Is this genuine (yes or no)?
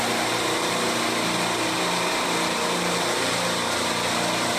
yes